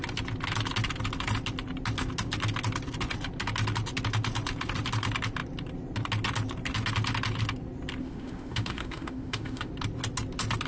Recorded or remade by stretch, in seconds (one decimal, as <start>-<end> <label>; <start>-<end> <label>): 0.0-8.0 recorded; 8.0-9.7 remade; 9.7-10.7 recorded